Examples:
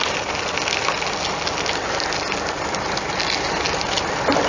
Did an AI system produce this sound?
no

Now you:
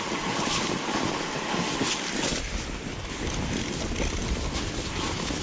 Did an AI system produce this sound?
no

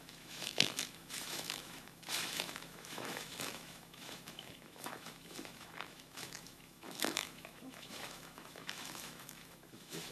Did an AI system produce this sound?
yes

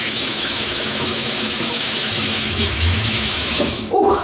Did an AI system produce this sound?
yes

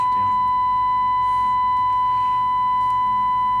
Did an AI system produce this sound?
no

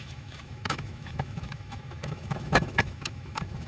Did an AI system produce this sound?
yes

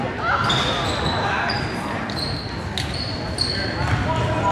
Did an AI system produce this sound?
no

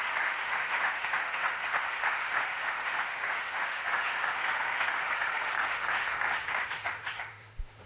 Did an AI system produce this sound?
yes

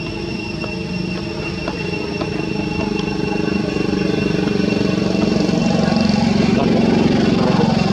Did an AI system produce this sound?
no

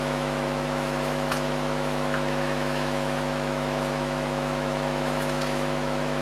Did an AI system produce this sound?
yes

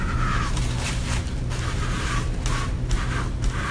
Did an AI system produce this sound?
no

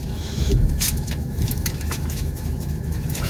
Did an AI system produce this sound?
yes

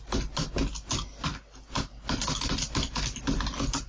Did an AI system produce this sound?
no